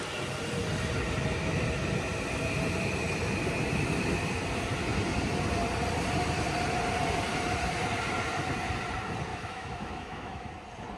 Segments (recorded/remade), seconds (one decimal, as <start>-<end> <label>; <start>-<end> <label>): 0.0-9.3 recorded; 9.3-10.5 remade; 10.5-11.0 recorded

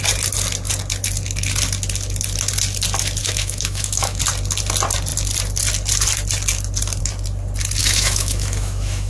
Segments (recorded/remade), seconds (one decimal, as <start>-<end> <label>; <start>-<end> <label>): 0.0-3.2 recorded; 3.2-4.2 remade; 4.2-7.8 recorded; 7.8-9.1 remade